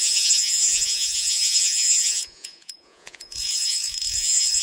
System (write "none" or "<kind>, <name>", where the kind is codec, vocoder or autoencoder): vocoder, Vocos